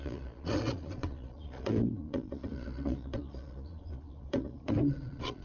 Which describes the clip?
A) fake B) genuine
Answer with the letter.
A